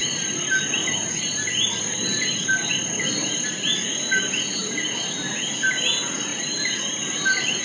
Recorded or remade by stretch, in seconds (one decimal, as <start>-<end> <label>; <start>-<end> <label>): 0.0-7.6 recorded